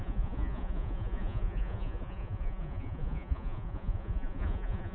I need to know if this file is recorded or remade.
remade